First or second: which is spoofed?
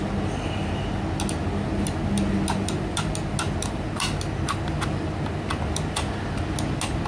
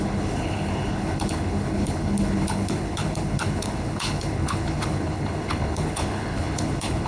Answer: second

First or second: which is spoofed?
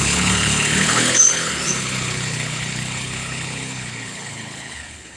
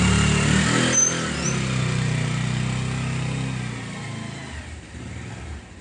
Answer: first